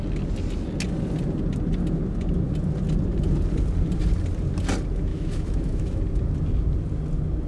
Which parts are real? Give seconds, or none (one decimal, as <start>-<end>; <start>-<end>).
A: 0.0-5.1; 6.0-7.5